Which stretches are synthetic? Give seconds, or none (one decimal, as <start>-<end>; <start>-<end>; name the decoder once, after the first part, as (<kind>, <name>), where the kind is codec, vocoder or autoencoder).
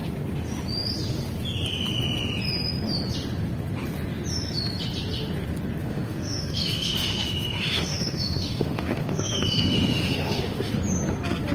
5.8-10.7 (autoencoder, DAC-VAE)